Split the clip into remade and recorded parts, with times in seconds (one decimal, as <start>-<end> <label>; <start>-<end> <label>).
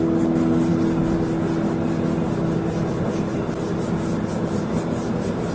0.0-5.5 recorded